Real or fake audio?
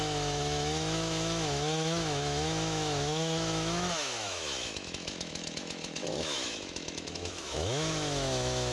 fake